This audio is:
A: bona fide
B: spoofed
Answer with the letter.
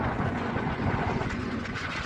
B